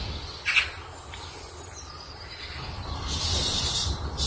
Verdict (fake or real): real